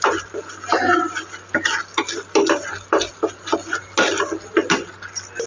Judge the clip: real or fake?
real